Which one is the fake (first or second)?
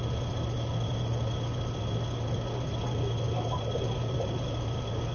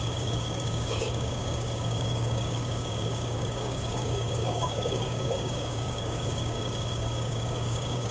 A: second